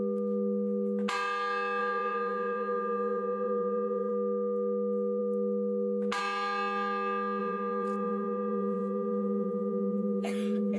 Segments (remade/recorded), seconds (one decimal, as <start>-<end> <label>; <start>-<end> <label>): 0.0-1.8 recorded; 1.8-4.1 remade; 4.1-7.4 recorded; 7.4-10.8 remade